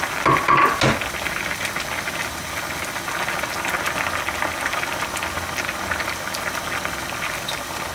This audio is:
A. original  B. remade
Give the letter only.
A